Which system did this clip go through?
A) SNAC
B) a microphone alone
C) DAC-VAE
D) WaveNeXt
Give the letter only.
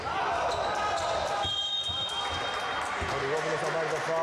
B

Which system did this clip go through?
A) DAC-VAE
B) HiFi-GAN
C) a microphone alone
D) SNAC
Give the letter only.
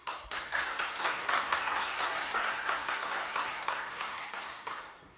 D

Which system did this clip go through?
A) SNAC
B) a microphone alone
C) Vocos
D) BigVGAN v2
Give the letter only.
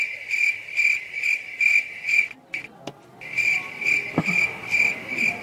B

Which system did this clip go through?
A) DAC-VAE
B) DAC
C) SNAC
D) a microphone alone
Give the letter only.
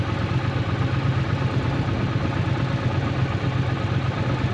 D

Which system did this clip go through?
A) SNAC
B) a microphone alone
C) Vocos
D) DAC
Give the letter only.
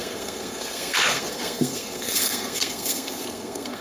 A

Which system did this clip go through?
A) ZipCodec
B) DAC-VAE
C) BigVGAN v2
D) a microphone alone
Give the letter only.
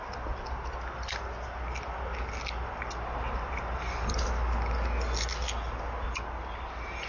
D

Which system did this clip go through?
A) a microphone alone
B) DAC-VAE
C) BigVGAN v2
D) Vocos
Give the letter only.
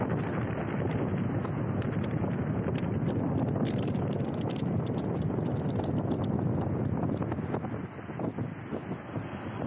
A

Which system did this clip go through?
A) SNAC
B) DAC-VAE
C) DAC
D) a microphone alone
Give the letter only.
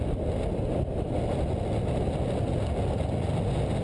D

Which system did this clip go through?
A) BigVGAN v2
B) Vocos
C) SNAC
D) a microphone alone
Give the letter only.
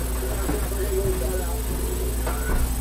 D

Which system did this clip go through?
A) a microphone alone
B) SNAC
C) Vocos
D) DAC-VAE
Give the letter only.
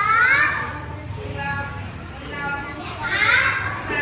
A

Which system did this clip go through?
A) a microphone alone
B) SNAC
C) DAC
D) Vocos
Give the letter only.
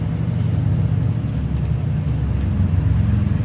A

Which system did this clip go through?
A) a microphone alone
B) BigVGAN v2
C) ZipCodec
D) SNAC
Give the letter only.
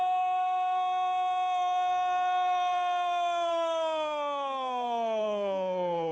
D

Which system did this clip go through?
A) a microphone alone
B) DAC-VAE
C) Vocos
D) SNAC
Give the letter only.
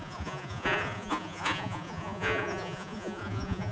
C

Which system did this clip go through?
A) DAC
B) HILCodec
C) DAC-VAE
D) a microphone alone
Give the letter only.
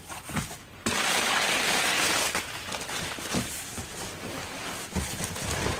D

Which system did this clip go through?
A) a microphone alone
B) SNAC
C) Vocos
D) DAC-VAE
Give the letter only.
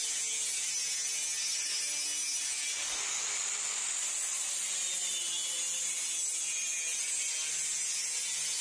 A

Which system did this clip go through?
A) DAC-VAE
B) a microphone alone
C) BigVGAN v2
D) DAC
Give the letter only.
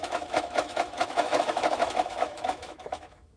A